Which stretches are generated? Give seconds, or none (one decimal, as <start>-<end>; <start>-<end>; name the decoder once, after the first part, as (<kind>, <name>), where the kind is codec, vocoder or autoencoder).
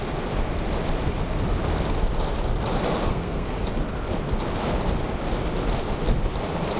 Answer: 3.0-3.5 (codec, SNAC)